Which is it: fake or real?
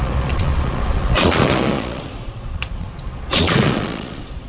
fake